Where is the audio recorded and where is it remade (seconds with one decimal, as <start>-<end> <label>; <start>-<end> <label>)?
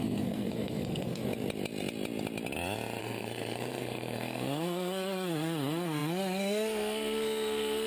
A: 0.0-1.2 remade; 1.2-3.0 recorded; 3.0-7.9 remade